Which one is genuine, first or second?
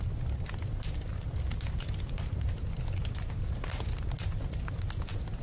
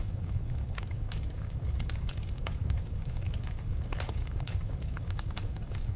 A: first